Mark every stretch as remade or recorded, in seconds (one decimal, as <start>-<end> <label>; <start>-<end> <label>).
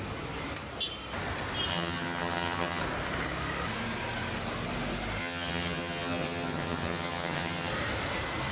0.0-1.7 recorded; 1.7-2.8 remade; 2.8-5.2 recorded; 5.2-7.7 remade; 7.7-8.5 recorded